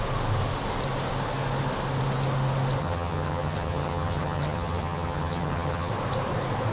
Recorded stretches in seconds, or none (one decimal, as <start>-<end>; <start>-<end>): 0.0-2.8; 5.9-6.7